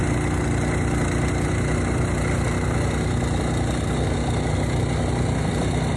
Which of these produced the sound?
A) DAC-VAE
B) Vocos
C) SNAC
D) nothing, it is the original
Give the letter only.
D